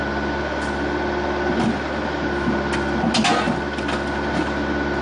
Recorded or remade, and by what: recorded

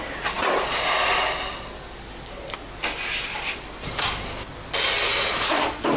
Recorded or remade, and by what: recorded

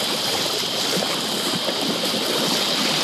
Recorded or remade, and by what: recorded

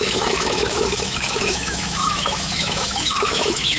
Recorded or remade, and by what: remade, autoencoder, DAC-VAE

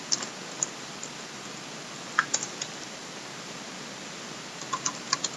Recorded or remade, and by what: recorded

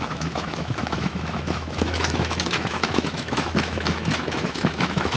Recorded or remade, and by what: remade, autoencoder, DAC-VAE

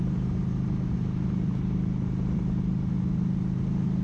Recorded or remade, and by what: recorded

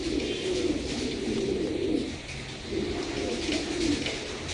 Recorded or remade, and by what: recorded